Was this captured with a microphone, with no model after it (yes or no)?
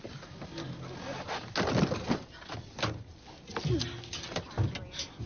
yes